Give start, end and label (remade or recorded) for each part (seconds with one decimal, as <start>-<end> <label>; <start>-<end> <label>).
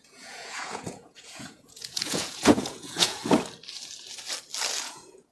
0.0-3.2 remade; 3.2-4.8 recorded; 4.8-5.3 remade